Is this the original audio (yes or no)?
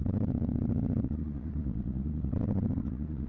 no